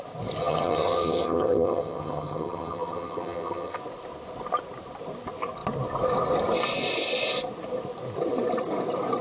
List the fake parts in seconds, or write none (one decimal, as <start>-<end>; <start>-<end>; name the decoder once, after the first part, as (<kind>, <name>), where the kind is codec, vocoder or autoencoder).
0.4-3.8 (vocoder, HiFi-GAN)